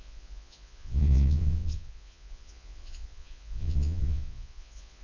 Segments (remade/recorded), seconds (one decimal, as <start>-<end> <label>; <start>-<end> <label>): 0.0-5.0 remade